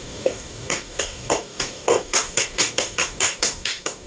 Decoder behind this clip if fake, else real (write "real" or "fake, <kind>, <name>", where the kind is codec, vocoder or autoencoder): fake, codec, DAC